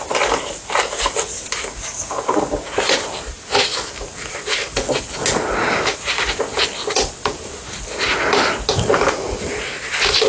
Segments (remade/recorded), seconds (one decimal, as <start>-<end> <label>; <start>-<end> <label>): 0.0-10.3 recorded